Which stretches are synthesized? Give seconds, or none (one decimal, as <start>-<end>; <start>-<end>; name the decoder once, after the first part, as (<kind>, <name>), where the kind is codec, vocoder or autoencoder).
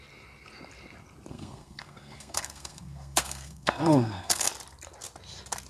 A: 1.3-4.5 (codec, SNAC)